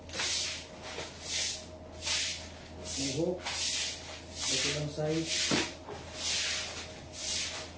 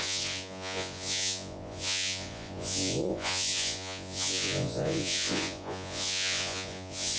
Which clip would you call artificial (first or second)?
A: second